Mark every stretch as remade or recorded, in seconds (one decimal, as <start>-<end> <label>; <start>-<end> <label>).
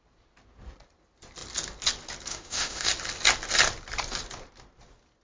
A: 0.0-2.3 recorded; 2.3-2.9 remade; 2.9-5.2 recorded